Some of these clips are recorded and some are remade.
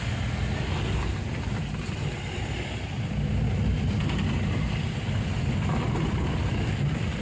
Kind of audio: recorded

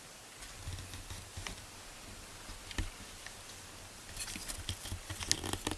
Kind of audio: recorded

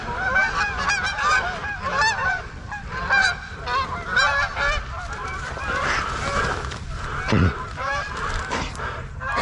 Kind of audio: remade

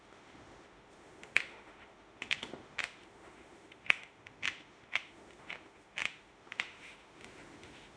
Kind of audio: remade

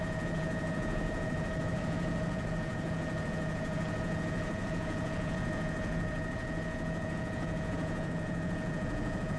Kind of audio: remade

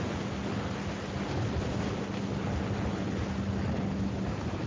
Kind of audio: recorded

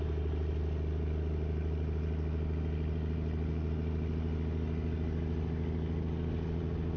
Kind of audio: recorded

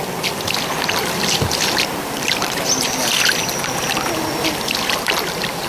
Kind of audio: recorded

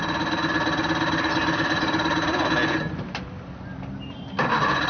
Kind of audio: recorded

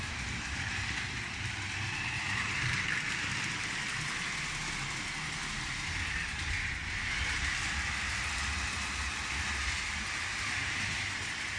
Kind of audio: recorded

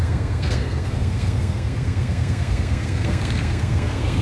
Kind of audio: remade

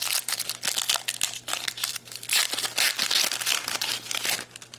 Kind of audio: recorded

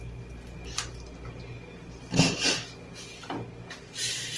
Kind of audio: recorded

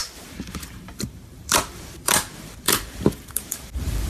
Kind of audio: remade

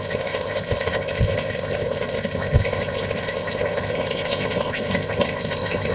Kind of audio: remade